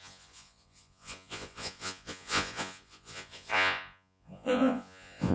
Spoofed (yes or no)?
yes